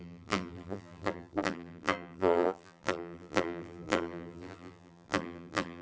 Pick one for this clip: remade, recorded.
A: remade